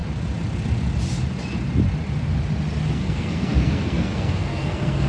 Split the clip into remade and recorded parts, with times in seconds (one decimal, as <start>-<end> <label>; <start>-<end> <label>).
0.0-2.9 recorded; 2.9-5.1 remade